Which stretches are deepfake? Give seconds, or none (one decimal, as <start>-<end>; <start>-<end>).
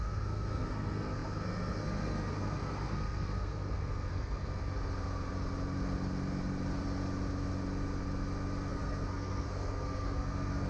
0.0-4.6; 8.7-10.7